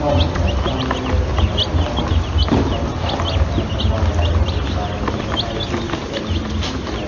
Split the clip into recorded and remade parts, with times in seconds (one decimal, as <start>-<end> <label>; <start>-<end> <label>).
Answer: 0.0-7.1 recorded